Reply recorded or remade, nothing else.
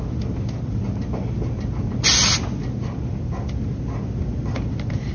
recorded